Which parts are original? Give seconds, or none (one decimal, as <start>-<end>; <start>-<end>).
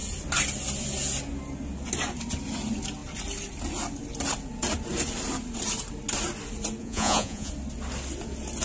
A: 0.0-6.8; 7.5-8.6